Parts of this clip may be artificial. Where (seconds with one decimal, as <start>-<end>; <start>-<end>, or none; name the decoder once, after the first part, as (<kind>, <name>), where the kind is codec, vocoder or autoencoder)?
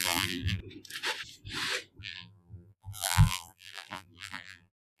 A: 0.0-0.6 (vocoder, BigVGAN v2); 2.0-5.0